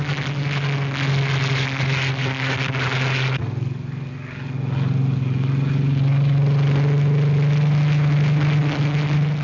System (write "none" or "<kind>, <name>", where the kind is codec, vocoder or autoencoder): none